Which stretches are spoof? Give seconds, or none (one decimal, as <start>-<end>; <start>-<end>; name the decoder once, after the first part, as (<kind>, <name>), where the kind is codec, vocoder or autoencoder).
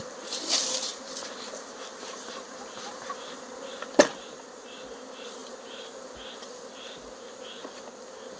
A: 0.0-5.4 (vocoder, BigVGAN v2); 8.0-8.4